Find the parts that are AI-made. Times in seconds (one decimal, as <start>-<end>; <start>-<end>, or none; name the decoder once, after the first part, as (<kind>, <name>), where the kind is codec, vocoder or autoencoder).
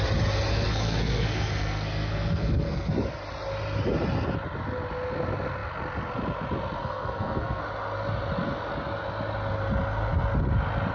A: 0.5-2.9 (codec, SNAC); 6.8-7.6